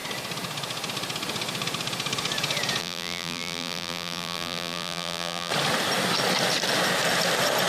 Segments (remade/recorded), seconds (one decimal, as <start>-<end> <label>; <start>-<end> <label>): 0.0-2.8 recorded; 2.8-5.5 remade; 5.5-7.7 recorded